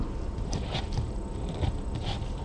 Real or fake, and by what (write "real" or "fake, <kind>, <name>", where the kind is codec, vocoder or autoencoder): real